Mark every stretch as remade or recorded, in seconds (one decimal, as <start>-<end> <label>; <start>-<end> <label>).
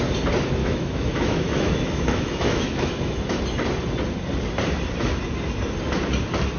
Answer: 0.0-0.6 recorded; 0.6-3.4 remade; 3.4-6.6 recorded